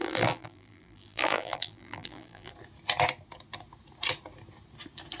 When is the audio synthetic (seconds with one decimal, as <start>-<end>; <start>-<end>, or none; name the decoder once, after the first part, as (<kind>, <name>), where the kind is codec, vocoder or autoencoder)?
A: 0.0-2.5 (vocoder, BigVGAN v2)